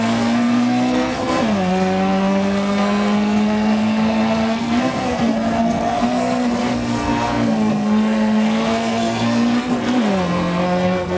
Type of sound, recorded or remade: remade